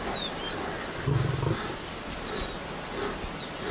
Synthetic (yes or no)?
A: no